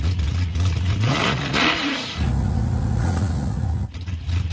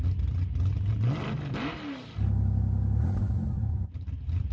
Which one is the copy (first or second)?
first